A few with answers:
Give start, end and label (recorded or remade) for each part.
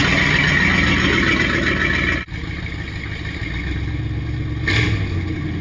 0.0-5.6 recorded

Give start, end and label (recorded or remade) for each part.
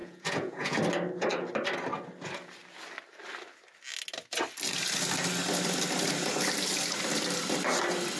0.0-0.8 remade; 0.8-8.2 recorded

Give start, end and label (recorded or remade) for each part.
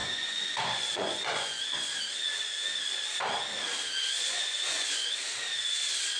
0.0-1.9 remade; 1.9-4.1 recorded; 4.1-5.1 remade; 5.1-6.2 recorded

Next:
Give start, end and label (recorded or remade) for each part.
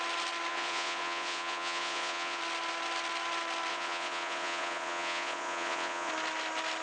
0.0-0.5 recorded; 0.5-2.4 remade; 2.4-3.7 recorded; 3.7-6.1 remade; 6.1-6.8 recorded